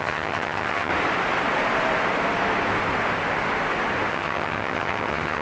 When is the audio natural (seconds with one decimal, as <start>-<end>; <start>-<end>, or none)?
0.9-4.1